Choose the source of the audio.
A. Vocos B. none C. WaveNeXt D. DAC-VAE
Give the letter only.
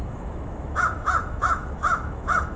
D